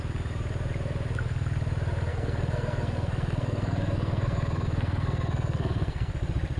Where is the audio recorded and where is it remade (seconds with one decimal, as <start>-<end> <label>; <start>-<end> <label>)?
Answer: 0.0-2.1 recorded; 2.1-6.1 remade; 6.1-6.6 recorded